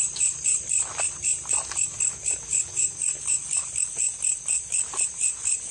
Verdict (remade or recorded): recorded